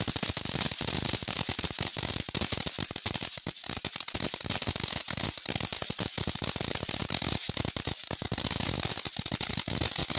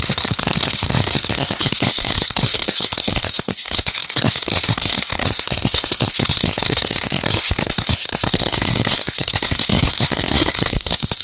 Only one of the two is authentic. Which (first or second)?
first